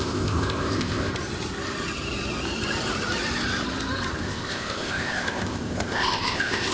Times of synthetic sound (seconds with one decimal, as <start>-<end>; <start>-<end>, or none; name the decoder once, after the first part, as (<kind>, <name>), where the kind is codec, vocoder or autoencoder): 0.0-1.1 (codec, ZipCodec); 4.2-6.7